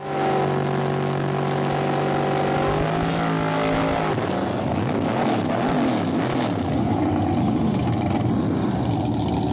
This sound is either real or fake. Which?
real